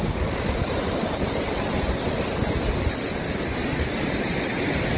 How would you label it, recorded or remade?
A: recorded